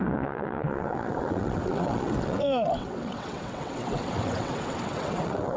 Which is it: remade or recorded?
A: remade